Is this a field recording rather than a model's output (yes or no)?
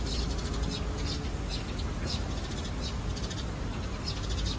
yes